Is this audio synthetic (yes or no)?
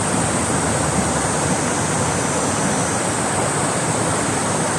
no